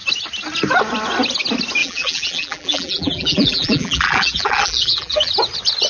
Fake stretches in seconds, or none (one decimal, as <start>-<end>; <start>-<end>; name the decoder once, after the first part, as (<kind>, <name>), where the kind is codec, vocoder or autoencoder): 1.8-5.3 (vocoder, BigVGAN v2)